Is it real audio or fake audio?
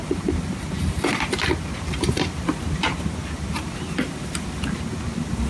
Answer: fake